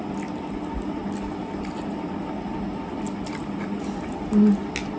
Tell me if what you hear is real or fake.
real